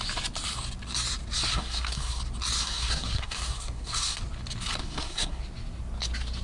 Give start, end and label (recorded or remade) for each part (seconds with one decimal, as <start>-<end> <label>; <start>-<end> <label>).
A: 0.0-1.5 recorded; 1.5-2.2 remade; 2.2-2.6 recorded; 2.6-4.2 remade; 4.2-4.8 recorded; 4.8-5.4 remade; 5.4-6.4 recorded